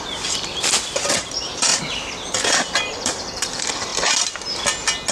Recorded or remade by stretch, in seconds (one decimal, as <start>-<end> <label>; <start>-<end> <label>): 0.0-1.7 remade; 1.7-2.8 recorded; 2.8-3.9 remade; 3.9-5.1 recorded